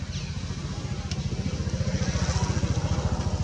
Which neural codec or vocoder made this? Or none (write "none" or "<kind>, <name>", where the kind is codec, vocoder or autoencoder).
none